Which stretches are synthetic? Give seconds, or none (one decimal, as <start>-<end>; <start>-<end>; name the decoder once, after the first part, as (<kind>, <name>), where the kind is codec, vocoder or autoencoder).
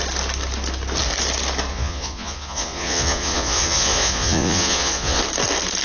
1.7-5.2 (vocoder, Vocos)